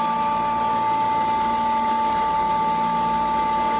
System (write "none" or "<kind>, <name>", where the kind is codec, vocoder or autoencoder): none